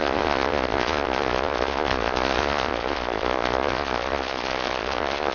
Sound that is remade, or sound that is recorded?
remade